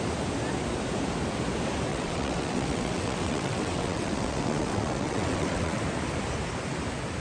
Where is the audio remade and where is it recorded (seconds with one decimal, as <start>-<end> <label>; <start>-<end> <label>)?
0.0-1.9 recorded; 1.9-5.8 remade; 5.8-7.2 recorded